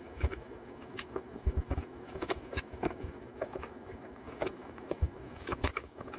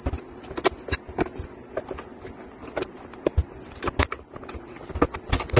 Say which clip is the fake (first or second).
first